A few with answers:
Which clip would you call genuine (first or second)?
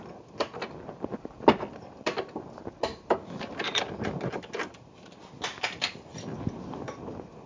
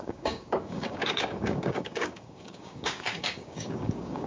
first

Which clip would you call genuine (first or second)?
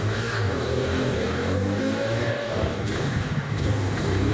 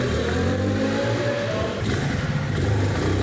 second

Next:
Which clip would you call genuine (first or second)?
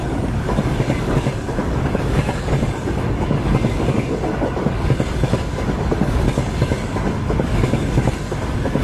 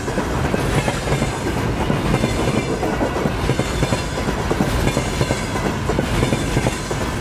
second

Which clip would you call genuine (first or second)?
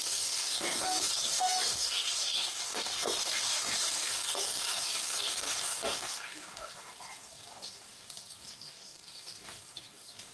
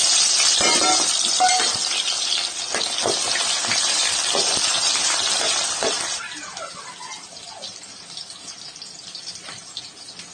second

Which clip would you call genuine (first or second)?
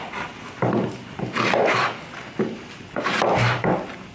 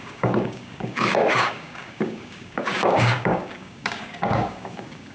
first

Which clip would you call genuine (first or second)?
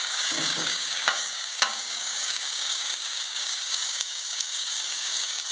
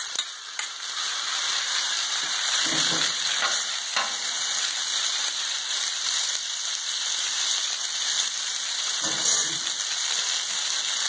second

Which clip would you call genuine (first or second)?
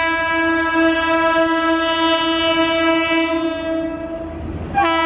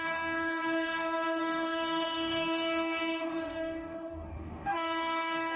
first